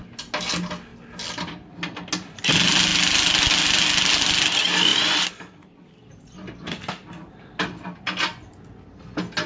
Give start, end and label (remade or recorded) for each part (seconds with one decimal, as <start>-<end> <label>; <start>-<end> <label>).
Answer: 0.0-4.9 recorded; 4.9-8.5 remade; 8.5-9.5 recorded